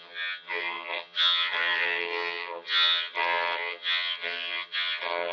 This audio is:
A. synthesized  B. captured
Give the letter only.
A